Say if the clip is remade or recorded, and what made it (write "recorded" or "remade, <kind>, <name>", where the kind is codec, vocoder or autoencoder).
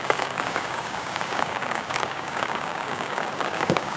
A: remade, codec, DAC